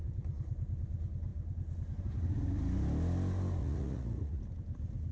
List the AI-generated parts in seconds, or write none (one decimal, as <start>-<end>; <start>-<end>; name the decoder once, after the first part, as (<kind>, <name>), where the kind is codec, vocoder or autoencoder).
3.6-4.4 (vocoder, Vocos)